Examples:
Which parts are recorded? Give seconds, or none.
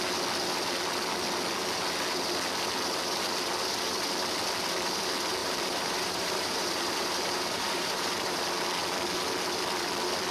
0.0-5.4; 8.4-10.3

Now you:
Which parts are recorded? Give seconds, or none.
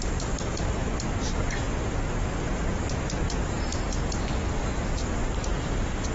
0.0-6.1